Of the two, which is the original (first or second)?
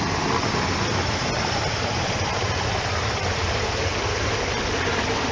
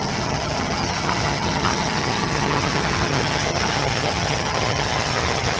first